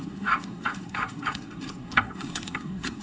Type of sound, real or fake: fake